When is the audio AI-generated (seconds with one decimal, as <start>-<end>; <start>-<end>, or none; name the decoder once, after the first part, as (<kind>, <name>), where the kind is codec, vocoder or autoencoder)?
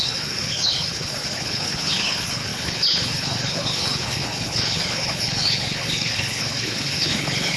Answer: 0.0-7.6 (codec, HILCodec)